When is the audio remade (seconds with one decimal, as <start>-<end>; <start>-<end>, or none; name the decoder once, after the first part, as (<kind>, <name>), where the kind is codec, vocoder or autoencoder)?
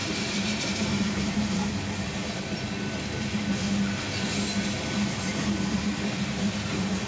0.0-1.7 (vocoder, BigVGAN v2); 2.2-3.4